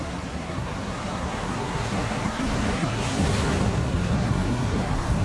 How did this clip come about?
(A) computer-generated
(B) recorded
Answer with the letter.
A